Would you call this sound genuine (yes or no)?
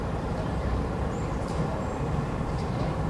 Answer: no